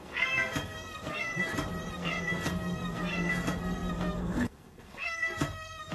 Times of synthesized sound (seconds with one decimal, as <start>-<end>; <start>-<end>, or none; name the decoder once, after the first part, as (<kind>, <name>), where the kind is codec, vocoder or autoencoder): 0.0-1.3 (codec, SNAC); 1.9-5.9